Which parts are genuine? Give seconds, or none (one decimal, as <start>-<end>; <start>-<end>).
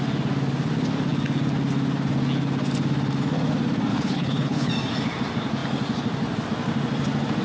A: 0.0-3.9; 4.7-7.4